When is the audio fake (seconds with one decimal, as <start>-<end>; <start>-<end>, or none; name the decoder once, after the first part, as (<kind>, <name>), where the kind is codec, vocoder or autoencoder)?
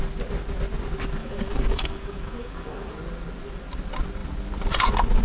1.2-2.9 (codec, DAC)